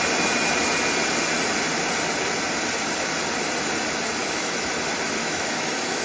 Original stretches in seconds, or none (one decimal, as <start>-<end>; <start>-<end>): 0.0-4.2; 4.7-5.2